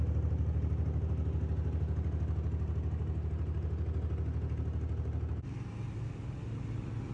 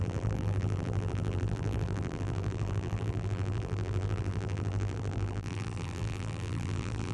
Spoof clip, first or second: second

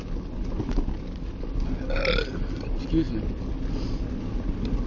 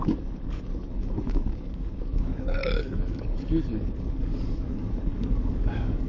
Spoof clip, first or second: second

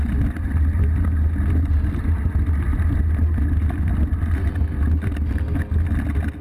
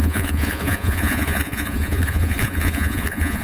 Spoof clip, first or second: second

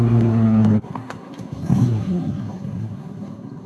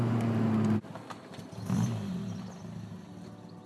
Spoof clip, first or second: first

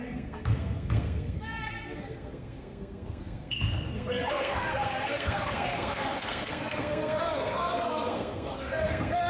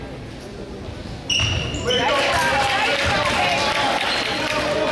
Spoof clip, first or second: first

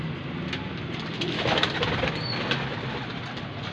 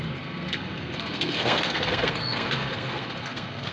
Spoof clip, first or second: second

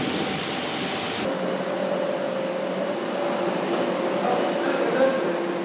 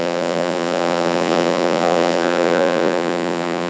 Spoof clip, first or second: second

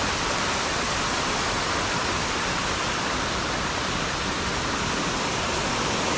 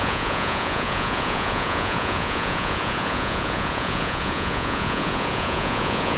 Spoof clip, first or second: second